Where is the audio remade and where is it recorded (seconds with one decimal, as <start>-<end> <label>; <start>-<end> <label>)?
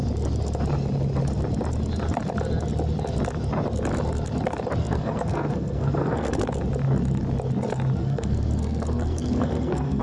0.0-4.8 recorded; 4.8-6.3 remade; 6.3-8.0 recorded; 8.0-10.0 remade